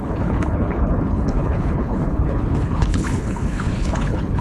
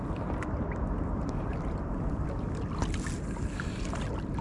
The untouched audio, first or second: second